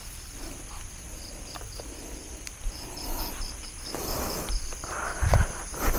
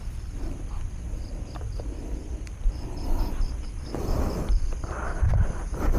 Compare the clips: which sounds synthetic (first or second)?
second